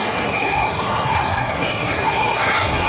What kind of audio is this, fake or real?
fake